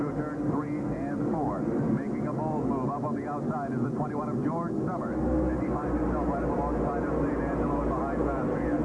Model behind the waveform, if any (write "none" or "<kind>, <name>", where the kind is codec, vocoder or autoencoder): none